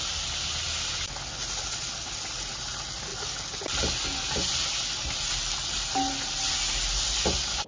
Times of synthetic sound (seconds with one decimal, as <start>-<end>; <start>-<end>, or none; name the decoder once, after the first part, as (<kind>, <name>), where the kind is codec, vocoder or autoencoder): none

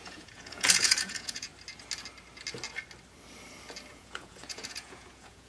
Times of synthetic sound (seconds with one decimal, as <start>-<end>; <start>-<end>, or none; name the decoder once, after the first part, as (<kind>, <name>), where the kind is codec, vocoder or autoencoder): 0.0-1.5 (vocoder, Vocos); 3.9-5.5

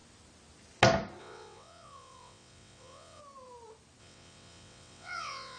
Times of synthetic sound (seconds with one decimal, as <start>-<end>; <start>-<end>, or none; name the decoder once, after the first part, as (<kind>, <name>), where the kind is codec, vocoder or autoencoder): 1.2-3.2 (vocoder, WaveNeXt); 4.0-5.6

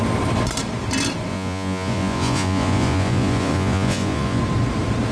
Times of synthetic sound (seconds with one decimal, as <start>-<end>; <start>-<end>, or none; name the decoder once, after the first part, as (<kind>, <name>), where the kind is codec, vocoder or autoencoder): 1.3-4.4 (vocoder, Vocos)

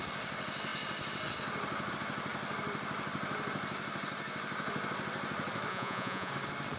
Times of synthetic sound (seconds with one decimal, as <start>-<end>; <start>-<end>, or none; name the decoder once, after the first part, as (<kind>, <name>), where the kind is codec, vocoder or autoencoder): 5.7-6.3 (vocoder, Vocos)